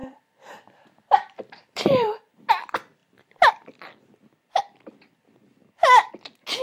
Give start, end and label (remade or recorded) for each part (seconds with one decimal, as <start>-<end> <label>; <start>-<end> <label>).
0.0-2.5 remade; 2.5-3.0 recorded; 3.0-3.5 remade; 3.5-5.6 recorded; 5.6-6.1 remade; 6.1-6.6 recorded